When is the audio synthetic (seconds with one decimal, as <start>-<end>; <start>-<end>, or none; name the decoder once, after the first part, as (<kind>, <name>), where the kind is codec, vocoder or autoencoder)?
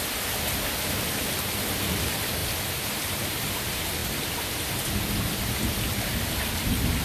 none